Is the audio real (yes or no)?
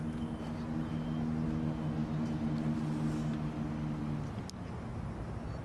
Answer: yes